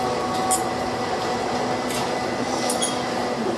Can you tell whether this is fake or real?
real